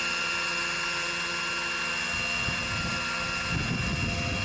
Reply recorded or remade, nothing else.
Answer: recorded